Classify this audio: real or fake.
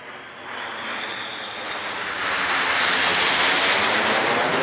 real